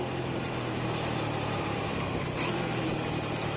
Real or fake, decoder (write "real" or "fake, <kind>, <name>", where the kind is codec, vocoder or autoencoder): fake, vocoder, BigVGAN v2